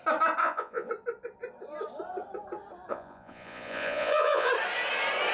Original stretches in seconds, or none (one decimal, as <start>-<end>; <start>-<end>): 0.0-0.4; 0.9-2.9; 4.5-5.3